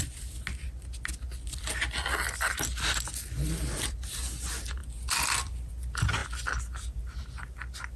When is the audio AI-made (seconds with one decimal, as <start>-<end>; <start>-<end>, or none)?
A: none